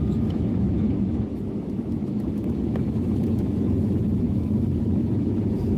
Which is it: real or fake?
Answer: fake